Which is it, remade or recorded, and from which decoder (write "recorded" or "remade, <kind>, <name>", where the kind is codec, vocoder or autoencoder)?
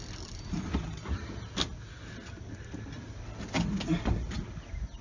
recorded